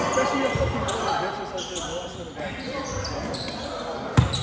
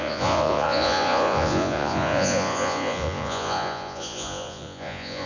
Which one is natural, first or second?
first